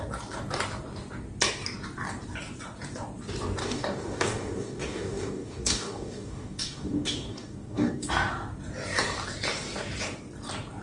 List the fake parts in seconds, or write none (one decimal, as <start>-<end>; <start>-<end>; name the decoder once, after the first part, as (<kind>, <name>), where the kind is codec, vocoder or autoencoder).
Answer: 3.6-8.1 (codec, DAC)